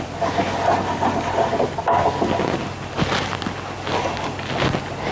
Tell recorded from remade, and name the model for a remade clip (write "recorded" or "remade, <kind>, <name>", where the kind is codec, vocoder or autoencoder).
recorded